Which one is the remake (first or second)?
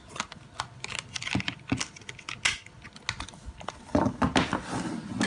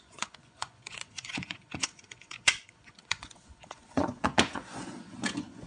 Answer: second